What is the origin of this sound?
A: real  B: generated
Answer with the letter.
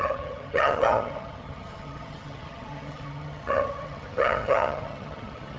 B